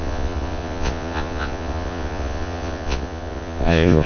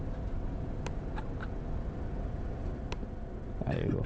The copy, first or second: first